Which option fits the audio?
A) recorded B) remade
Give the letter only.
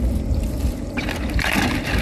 A